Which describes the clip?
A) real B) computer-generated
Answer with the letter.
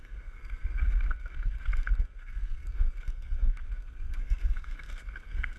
B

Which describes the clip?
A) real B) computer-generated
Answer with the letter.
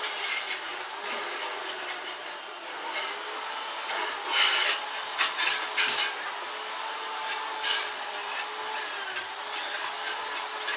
A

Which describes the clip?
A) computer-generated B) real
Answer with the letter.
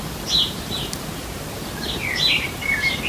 A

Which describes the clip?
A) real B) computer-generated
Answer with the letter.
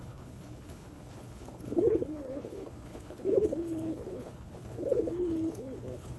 B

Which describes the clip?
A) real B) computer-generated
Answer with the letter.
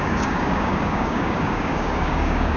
B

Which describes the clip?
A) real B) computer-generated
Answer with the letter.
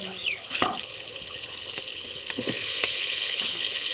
B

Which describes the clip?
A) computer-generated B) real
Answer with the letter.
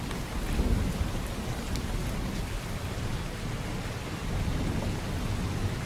B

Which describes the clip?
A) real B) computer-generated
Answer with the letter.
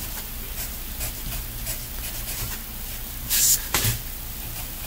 A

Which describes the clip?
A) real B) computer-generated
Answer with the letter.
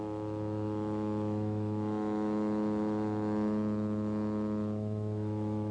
B